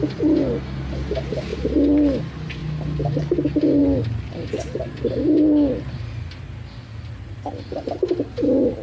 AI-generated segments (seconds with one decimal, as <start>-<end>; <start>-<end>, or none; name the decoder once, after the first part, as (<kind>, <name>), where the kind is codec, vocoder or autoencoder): none